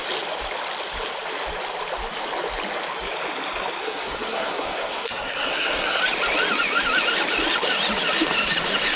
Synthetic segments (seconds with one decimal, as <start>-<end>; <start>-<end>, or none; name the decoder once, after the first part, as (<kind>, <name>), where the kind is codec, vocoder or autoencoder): 3.8-6.0 (codec, SNAC)